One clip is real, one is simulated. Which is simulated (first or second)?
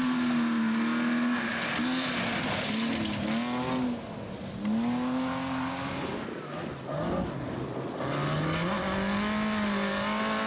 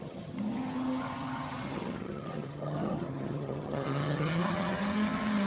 second